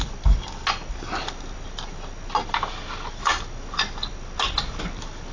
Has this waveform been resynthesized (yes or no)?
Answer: no